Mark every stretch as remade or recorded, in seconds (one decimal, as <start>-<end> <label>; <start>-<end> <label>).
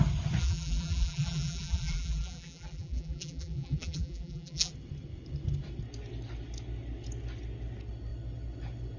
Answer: 0.0-0.4 recorded; 0.4-4.7 remade; 4.7-9.0 recorded